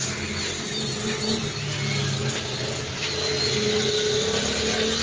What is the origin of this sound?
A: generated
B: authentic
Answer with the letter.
B